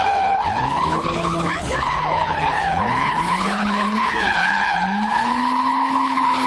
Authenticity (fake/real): fake